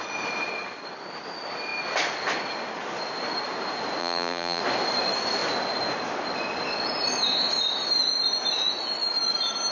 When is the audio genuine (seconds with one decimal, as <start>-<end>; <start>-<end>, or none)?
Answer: 0.0-4.0; 4.6-9.7